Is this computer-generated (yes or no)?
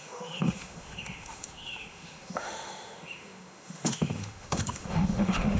yes